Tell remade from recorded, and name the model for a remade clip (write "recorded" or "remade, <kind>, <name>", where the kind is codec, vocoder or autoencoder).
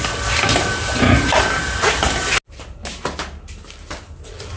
recorded